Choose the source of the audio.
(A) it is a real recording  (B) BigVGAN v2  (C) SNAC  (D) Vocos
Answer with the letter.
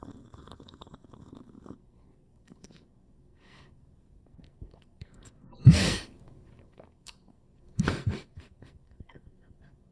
C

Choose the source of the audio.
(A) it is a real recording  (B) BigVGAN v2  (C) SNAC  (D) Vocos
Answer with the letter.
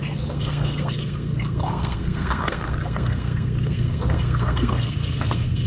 C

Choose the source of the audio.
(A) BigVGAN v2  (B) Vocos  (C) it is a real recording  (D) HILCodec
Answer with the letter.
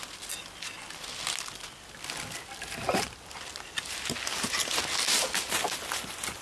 C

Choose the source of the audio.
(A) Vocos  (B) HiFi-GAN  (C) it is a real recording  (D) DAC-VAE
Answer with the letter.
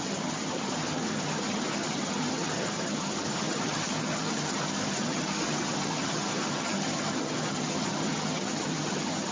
B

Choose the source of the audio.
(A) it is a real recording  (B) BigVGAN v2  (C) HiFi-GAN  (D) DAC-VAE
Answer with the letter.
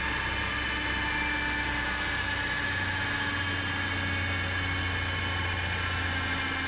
A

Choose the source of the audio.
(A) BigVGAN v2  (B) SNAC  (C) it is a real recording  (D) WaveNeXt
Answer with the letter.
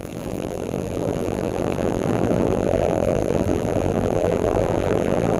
A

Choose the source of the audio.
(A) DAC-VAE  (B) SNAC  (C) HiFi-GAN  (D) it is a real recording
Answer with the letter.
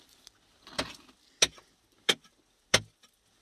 D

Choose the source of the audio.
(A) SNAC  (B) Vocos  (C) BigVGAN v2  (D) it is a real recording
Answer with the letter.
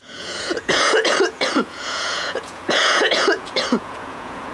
B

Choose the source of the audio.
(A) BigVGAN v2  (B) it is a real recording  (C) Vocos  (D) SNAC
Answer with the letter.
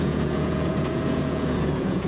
C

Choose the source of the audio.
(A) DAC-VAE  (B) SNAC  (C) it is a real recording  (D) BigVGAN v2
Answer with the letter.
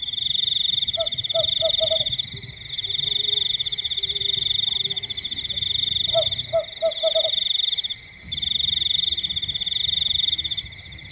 C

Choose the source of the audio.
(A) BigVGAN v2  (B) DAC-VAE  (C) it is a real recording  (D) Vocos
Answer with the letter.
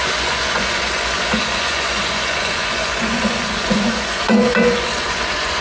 D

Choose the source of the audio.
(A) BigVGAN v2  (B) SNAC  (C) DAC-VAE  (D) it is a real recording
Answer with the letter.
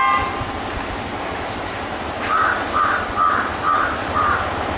D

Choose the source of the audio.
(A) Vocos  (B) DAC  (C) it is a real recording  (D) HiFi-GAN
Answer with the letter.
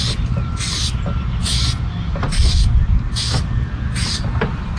C